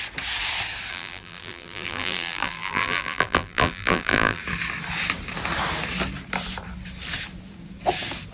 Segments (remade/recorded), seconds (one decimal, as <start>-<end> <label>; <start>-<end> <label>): 0.0-0.9 recorded; 0.9-4.4 remade; 4.4-8.3 recorded